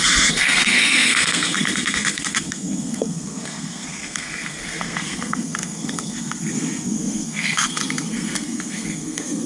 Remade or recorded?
remade